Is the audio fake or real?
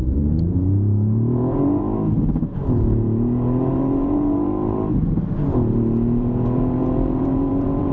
fake